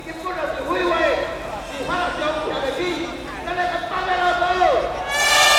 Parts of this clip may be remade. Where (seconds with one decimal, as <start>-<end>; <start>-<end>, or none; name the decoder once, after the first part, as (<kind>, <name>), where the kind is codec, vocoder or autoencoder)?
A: none